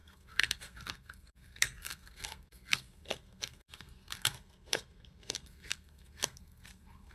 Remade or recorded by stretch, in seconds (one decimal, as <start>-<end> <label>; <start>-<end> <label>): 0.0-7.1 remade